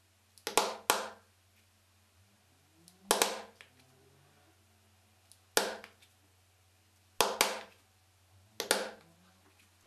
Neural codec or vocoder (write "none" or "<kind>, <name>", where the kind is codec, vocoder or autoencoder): none